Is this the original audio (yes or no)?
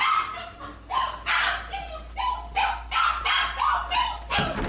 yes